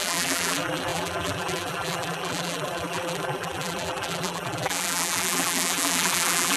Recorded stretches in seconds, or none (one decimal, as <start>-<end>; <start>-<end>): none